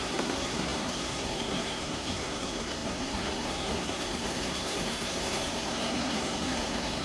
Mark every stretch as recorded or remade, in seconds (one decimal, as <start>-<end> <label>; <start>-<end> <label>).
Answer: 0.0-7.0 remade